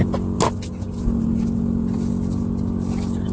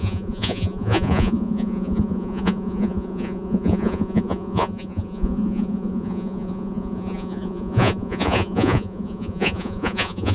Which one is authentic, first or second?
first